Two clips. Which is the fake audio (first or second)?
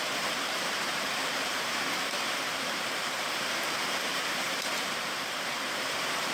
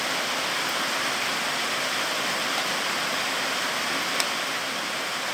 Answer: first